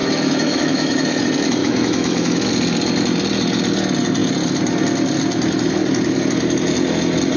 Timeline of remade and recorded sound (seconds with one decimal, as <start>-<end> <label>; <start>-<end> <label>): 0.0-1.2 remade; 1.2-1.6 recorded; 1.6-2.5 remade; 2.5-7.4 recorded